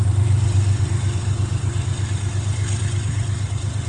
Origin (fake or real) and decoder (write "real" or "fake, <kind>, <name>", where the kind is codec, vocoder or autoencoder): fake, vocoder, BigVGAN v2